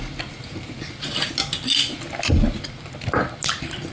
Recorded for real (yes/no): yes